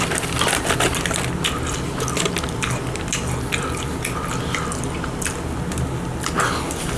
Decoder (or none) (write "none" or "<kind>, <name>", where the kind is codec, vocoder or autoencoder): none